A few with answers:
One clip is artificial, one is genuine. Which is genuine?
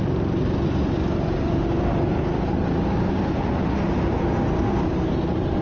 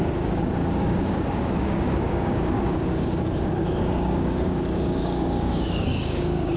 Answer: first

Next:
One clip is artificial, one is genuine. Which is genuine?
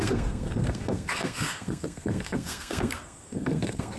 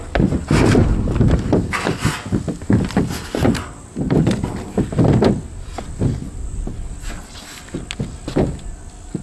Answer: second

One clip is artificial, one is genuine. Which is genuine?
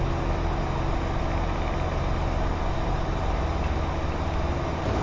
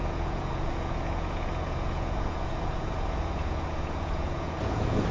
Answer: first